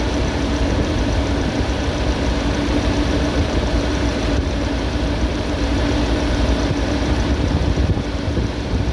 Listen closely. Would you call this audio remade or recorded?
remade